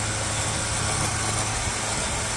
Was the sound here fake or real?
real